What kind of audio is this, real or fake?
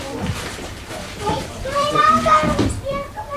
fake